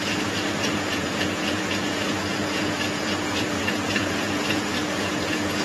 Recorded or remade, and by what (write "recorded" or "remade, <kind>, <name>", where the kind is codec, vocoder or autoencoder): remade, vocoder, Vocos